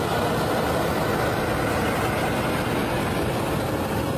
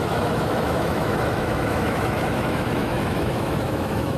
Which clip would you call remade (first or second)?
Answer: second